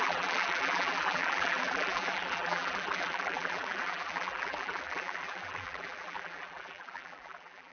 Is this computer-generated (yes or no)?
yes